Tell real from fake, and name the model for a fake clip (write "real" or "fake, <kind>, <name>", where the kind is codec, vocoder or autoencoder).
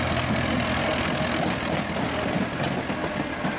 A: real